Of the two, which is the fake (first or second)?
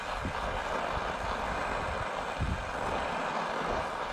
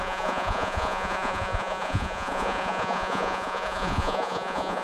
second